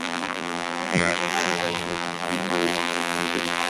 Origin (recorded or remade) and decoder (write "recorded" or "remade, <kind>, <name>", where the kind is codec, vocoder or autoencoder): remade, vocoder, BigVGAN v2